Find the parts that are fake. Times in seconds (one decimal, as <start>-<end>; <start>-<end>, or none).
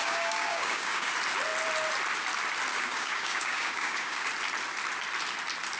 0.0-1.1; 2.7-4.3